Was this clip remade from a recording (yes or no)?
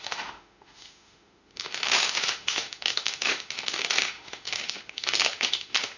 yes